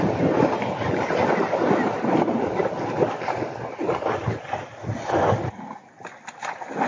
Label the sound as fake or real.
real